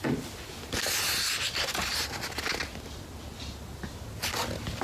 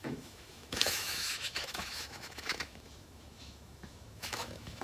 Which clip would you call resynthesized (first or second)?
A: second